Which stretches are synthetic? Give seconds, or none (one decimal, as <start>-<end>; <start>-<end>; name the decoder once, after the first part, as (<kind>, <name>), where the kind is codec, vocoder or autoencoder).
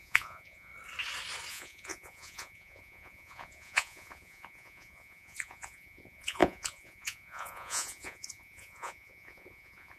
0.0-0.7 (vocoder, Vocos); 1.5-10.0